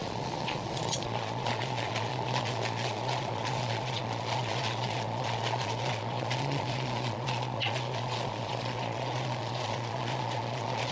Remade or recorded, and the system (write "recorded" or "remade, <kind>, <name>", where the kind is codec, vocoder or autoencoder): remade, vocoder, Vocos